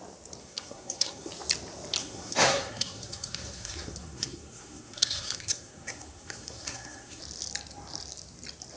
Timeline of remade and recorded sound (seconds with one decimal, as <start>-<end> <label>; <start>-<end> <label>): 0.0-0.4 recorded; 0.4-1.3 remade; 1.3-2.0 recorded; 2.0-7.2 remade; 7.2-8.8 recorded